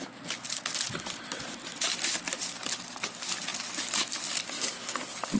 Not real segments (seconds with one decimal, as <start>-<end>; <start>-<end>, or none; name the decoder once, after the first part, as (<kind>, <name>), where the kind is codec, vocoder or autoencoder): none